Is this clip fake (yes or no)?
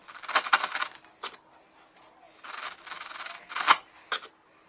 no